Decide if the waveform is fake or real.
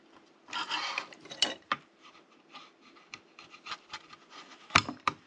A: fake